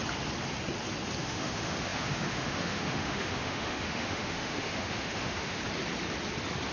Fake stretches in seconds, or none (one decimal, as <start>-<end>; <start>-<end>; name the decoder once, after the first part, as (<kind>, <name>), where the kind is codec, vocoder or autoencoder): 1.2-5.6 (autoencoder, DAC-VAE)

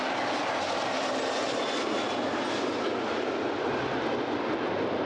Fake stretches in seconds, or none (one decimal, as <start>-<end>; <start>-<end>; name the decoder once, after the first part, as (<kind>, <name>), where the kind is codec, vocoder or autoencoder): none